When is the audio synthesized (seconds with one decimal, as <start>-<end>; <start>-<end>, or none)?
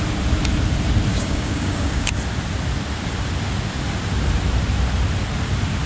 1.1-2.1